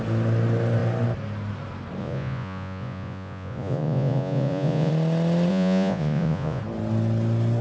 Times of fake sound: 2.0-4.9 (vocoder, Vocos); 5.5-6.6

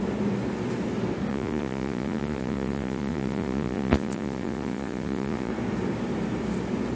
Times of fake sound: 1.3-5.5 (vocoder, Vocos)

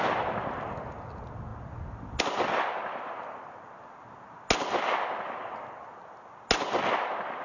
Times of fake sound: none

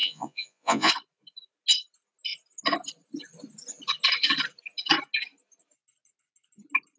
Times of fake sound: 0.0-0.9 (vocoder, Vocos)

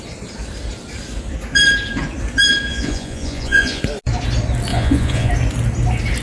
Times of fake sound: 2.7-3.8 (vocoder, Vocos); 4.7-5.3